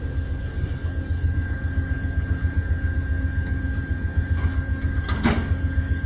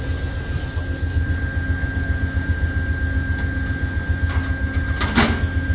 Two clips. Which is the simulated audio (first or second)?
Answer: first